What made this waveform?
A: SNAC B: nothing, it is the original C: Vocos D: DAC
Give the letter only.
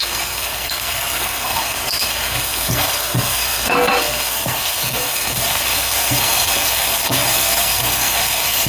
A